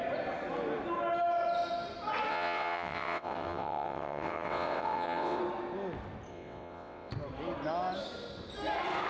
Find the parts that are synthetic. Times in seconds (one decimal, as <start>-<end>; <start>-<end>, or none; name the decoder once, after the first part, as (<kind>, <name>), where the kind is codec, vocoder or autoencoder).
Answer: 2.3-5.4 (vocoder, WaveNeXt); 6.3-7.1